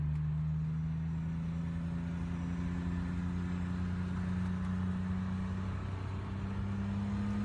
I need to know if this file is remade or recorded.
recorded